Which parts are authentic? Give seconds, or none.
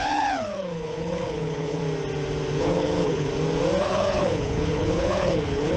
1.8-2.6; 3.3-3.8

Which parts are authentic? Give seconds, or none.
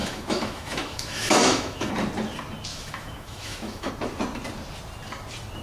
1.9-2.7; 3.9-5.6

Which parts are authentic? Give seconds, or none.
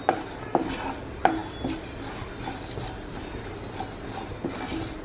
0.0-5.0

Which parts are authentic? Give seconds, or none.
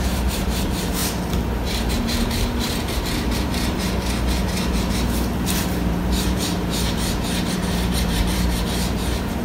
1.0-1.9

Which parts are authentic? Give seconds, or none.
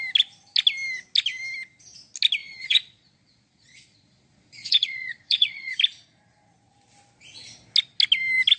0.0-2.4; 5.7-8.6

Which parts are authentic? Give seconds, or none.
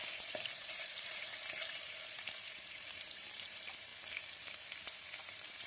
3.9-4.8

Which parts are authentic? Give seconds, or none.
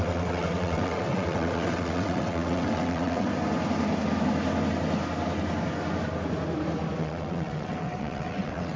3.3-7.0